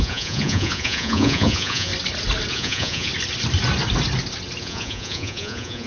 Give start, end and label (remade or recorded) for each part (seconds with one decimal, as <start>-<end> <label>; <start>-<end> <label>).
0.0-1.9 remade; 1.9-2.5 recorded; 2.5-3.1 remade; 3.1-4.6 recorded; 4.6-5.9 remade